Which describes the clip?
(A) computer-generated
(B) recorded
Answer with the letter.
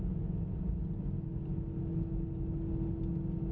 B